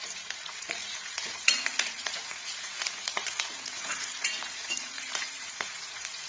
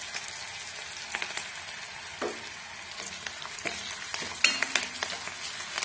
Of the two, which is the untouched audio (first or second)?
second